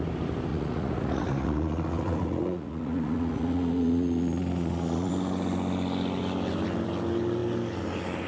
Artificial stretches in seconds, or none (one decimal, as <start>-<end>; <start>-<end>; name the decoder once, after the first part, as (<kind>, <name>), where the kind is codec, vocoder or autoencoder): 0.5-5.1 (vocoder, Vocos)